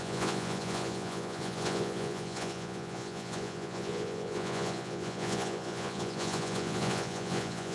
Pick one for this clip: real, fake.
fake